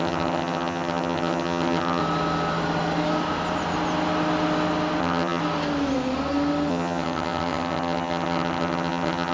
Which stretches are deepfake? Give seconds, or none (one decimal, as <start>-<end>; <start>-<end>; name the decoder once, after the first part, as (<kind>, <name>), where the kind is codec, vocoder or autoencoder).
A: 0.0-2.0 (vocoder, HiFi-GAN); 5.0-5.4; 6.7-9.3

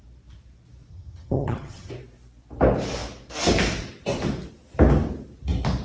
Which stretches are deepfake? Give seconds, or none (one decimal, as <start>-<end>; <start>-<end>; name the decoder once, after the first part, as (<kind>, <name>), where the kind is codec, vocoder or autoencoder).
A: 0.9-1.9 (vocoder, HiFi-GAN)

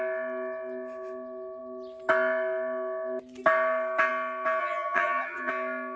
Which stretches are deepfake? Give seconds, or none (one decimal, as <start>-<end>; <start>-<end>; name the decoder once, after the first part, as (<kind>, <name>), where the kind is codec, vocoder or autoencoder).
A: 4.6-5.5 (vocoder, HiFi-GAN)

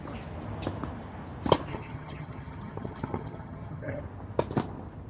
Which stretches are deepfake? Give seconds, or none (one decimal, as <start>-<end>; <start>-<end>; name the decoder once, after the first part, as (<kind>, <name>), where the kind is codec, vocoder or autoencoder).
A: 1.7-4.0 (vocoder, HiFi-GAN)

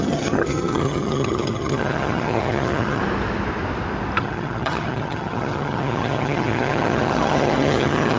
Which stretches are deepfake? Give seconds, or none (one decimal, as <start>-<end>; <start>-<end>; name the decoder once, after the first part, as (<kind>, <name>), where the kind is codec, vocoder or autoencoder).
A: 0.0-3.0 (vocoder, HiFi-GAN); 4.2-8.2